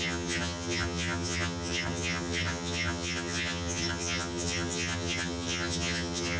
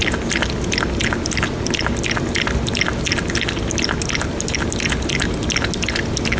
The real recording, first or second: second